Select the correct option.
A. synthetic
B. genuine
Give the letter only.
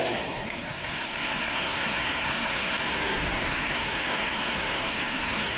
A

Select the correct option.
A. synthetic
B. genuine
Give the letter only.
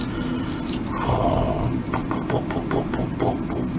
A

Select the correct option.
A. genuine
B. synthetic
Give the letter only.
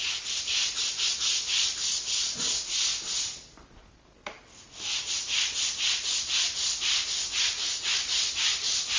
A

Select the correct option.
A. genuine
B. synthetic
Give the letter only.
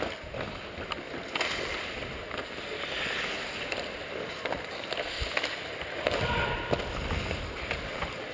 A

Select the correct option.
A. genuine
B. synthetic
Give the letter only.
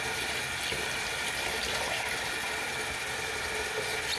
A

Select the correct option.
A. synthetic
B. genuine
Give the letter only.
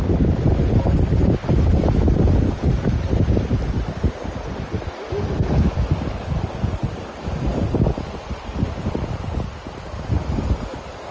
B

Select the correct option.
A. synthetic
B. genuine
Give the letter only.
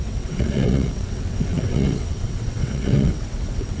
A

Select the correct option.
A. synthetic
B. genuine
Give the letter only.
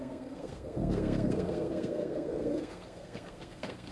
A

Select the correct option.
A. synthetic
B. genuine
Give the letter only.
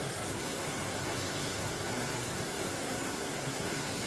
A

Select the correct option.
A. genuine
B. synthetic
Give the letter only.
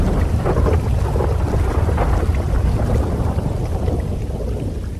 A